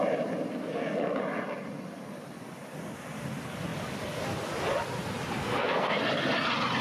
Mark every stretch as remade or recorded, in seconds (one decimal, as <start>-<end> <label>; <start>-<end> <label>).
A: 0.0-0.5 recorded; 0.5-1.2 remade; 1.2-5.4 recorded; 5.4-6.0 remade; 6.0-6.8 recorded